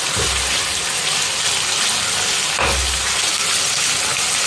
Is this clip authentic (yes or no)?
yes